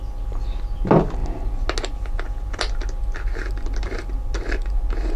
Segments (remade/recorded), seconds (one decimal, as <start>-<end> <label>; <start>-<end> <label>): 0.0-5.2 recorded